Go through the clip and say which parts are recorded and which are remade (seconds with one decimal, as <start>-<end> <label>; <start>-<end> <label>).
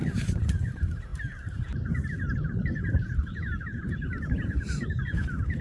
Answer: 0.0-5.6 remade